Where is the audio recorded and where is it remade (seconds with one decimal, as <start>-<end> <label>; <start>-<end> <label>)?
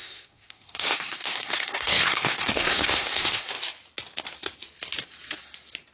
0.0-3.5 remade; 3.5-5.9 recorded